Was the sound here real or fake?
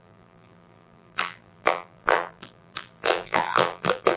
fake